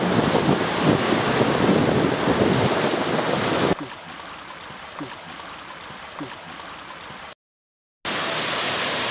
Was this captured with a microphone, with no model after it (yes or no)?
yes